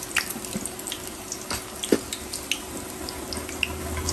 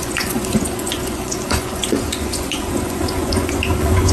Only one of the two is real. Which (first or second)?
first